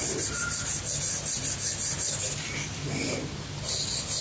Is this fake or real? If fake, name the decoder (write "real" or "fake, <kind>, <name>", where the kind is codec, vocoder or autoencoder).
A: real